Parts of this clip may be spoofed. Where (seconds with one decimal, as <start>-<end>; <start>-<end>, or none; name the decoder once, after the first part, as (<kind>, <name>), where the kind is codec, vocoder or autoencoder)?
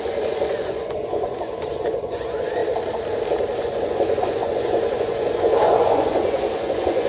0.0-2.6 (vocoder, Vocos); 3.6-7.1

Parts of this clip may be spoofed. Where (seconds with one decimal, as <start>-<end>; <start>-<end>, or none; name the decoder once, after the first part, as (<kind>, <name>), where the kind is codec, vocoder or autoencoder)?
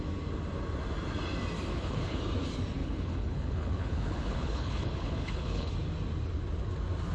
1.7-2.2 (codec, HILCodec); 2.8-5.7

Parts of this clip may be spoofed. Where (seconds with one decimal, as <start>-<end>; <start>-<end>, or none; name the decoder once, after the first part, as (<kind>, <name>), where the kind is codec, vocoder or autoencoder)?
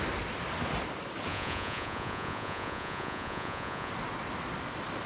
1.3-3.9 (vocoder, Vocos)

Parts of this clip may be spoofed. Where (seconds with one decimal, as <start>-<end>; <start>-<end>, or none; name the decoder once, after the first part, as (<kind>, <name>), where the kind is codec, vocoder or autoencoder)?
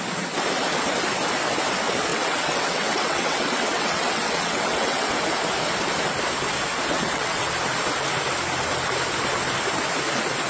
2.1-5.1 (vocoder, WaveNeXt); 6.9-7.5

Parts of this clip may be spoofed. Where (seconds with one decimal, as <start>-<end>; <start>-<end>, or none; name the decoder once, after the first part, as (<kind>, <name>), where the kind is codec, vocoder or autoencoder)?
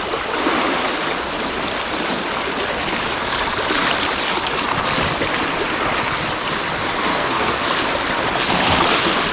7.1-7.6 (codec, SNAC)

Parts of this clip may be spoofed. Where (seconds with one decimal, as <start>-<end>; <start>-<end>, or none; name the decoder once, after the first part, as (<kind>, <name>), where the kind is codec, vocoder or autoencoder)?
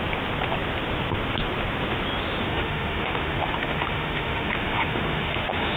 2.5-5.8 (autoencoder, DAC-VAE)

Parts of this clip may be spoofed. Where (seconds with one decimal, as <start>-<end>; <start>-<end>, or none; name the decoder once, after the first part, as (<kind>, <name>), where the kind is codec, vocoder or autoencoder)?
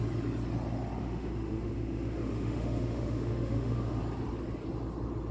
1.0-4.0 (autoencoder, DAC-VAE)